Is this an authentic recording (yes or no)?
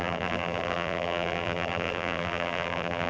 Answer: no